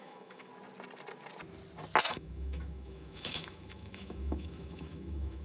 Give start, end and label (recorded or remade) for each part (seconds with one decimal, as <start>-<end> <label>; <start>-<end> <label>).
0.0-0.5 remade; 0.5-2.0 recorded; 2.0-5.4 remade